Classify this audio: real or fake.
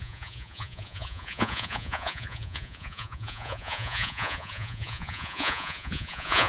fake